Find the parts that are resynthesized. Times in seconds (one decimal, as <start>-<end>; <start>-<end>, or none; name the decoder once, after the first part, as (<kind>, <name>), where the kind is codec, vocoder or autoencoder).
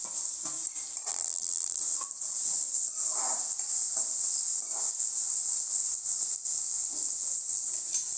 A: 1.1-1.8 (vocoder, BigVGAN v2)